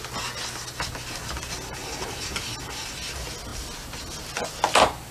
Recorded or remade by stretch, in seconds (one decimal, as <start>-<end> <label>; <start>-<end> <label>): 0.0-5.1 recorded

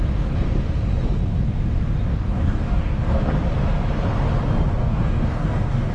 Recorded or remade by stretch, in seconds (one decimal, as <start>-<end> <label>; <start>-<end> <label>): 0.0-2.1 recorded; 2.1-3.2 remade; 3.2-4.8 recorded; 4.8-5.9 remade

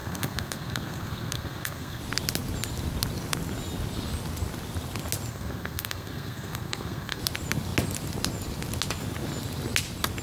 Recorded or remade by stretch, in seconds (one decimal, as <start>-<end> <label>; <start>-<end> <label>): 0.0-2.0 remade; 2.0-5.3 recorded; 5.3-7.2 remade; 7.2-10.2 recorded

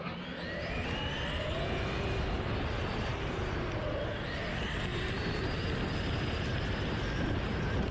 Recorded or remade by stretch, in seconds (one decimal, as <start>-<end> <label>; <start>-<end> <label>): 0.0-7.9 recorded

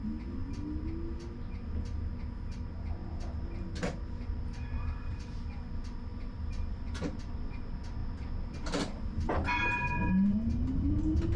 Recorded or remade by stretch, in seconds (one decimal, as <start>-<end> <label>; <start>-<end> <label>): 0.0-3.0 recorded; 3.0-5.4 remade; 5.4-6.1 recorded; 6.1-7.6 remade; 7.6-11.4 recorded

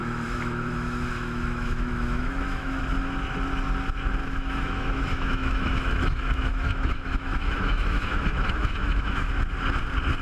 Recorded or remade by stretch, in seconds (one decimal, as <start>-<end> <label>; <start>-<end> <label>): 0.0-2.8 remade; 2.8-4.2 recorded; 4.2-9.3 remade; 9.3-10.2 recorded